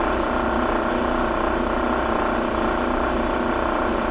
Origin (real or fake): real